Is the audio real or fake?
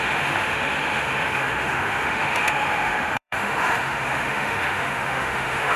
fake